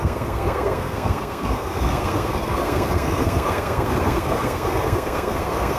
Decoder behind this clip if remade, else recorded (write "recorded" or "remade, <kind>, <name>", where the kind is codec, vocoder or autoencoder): remade, codec, SNAC